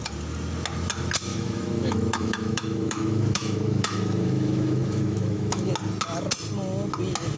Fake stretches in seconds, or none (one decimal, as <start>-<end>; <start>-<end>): 1.3-5.7